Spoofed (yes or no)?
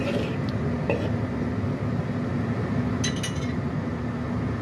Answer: no